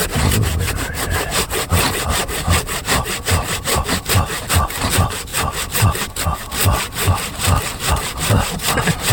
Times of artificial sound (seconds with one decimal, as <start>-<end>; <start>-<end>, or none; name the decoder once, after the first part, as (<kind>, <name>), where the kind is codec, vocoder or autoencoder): none